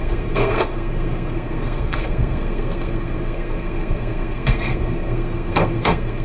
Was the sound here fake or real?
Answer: fake